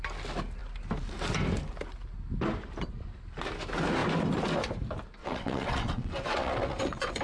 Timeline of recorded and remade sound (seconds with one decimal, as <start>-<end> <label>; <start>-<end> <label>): 0.0-5.2 recorded; 5.2-7.2 remade